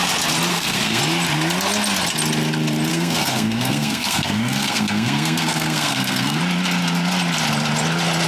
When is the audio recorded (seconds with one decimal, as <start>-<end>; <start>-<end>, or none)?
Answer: 0.0-0.5; 1.0-2.9; 6.4-8.3